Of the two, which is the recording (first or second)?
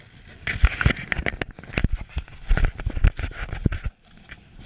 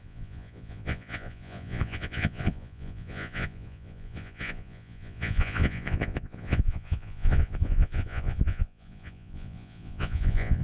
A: first